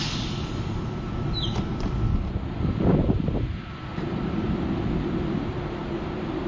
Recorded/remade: remade